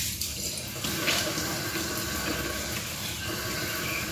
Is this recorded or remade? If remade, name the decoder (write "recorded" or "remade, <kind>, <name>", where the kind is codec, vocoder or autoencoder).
recorded